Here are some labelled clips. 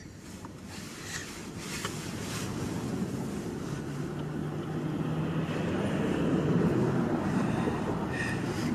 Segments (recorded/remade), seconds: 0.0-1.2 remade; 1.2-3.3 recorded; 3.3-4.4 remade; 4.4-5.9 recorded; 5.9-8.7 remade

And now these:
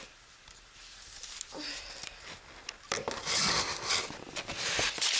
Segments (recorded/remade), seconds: 0.0-3.1 remade; 3.1-4.3 recorded; 4.3-5.2 remade

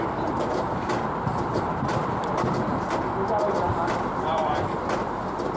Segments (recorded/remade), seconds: 0.0-2.7 remade; 2.7-3.7 recorded; 3.7-4.4 remade; 4.4-5.6 recorded